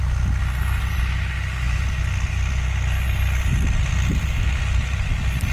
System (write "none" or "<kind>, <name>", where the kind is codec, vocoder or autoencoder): none